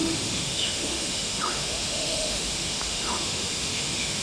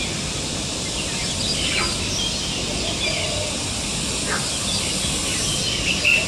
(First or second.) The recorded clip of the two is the second